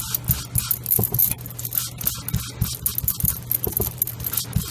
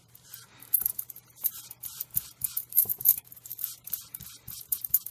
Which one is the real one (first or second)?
first